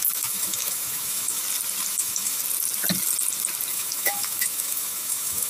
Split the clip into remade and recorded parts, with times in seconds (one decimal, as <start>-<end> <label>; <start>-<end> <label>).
0.0-1.4 remade; 1.4-1.9 recorded; 1.9-2.4 remade; 2.4-3.7 recorded; 3.7-5.5 remade